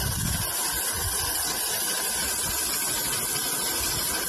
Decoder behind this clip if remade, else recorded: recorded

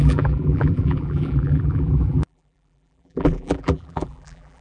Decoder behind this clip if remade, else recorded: remade, vocoder, BigVGAN v2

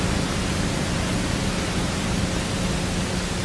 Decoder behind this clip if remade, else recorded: recorded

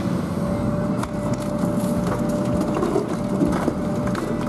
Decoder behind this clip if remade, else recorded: recorded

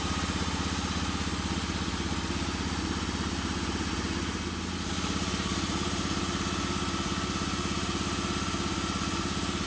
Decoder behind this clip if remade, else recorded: recorded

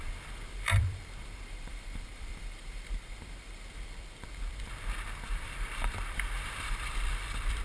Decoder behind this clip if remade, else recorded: remade, vocoder, BigVGAN v2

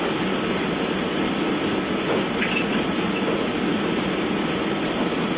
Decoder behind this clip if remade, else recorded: recorded